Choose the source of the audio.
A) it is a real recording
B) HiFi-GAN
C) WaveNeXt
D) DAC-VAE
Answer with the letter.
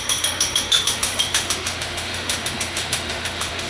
D